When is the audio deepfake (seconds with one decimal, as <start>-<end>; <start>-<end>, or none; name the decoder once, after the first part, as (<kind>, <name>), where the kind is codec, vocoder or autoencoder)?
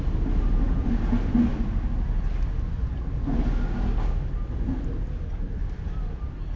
none